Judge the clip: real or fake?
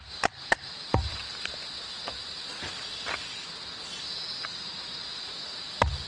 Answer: real